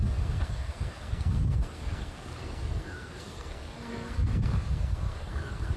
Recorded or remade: remade